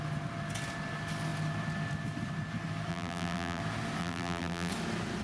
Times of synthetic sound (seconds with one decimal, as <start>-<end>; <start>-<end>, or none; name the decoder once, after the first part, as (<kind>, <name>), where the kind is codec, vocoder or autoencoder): 2.9-3.6 (vocoder, BigVGAN v2); 4.0-4.7